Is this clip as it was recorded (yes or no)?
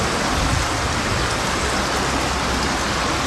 yes